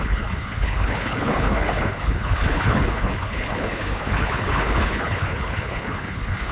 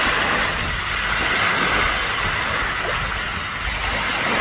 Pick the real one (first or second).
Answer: second